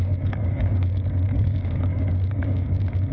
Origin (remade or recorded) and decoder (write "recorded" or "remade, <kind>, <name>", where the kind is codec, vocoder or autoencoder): remade, codec, DAC